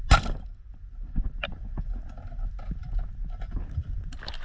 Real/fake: real